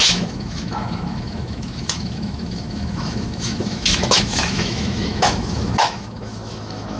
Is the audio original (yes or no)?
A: no